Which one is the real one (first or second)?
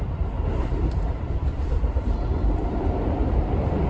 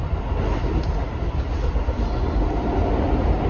second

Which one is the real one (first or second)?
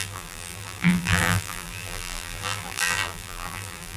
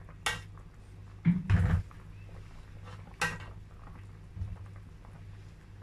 second